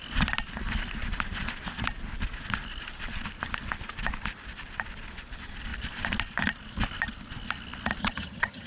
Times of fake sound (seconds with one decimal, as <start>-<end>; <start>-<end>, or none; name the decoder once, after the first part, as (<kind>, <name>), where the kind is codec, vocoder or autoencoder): 8.0-8.7 (vocoder, HiFi-GAN)